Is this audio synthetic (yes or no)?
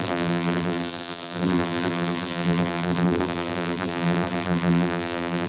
yes